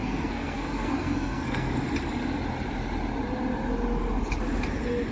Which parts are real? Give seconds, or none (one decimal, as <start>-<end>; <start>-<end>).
1.7-5.1